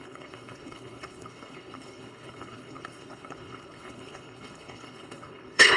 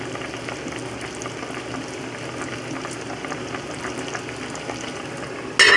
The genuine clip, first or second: second